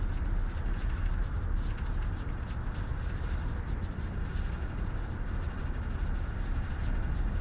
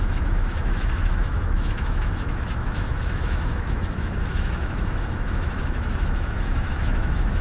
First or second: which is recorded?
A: first